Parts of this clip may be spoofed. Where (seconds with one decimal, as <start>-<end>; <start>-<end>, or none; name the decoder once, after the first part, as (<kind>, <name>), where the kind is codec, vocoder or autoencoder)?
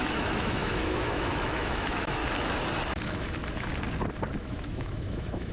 0.0-2.2 (autoencoder, DAC-VAE); 3.0-3.7; 4.4-5.5